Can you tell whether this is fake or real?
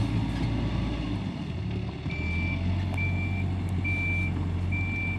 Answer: real